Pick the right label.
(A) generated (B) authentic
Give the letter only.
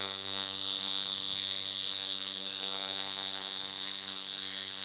A